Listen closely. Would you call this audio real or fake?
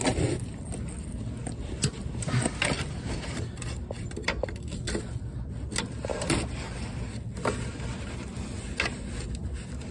real